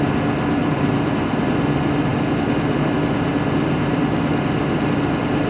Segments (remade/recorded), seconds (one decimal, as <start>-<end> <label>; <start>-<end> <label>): 0.0-0.6 recorded; 0.6-1.4 remade; 1.4-5.5 recorded